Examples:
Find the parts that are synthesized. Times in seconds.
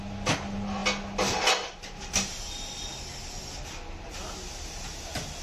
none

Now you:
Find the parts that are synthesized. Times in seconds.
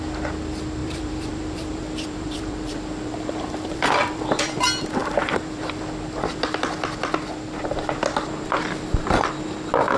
0.8-4.6 (vocoder, BigVGAN v2); 5.0-5.8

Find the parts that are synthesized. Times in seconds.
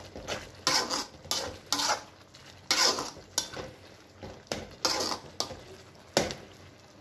none